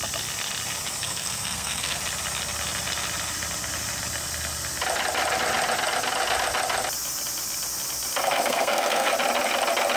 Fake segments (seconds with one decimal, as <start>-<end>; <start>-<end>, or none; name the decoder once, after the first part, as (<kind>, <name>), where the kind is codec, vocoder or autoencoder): 1.0-2.0 (codec, SNAC); 8.2-9.1